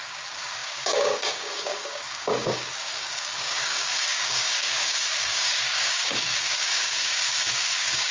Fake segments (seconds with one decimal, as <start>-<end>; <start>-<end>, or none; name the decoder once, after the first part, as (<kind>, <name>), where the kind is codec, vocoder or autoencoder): 0.0-8.1 (codec, DAC)